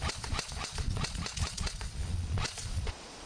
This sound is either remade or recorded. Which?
remade